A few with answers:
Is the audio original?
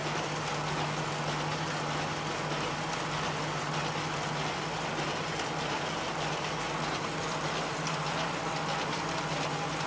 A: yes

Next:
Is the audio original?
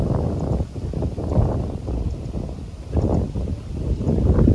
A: no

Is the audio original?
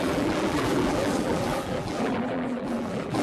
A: no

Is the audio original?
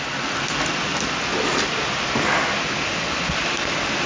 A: no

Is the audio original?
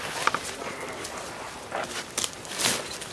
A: no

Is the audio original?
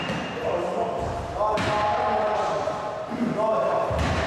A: yes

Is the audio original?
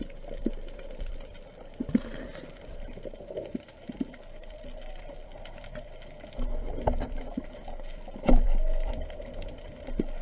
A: no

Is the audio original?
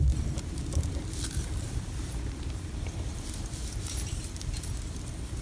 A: no